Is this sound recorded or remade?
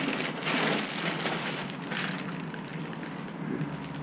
recorded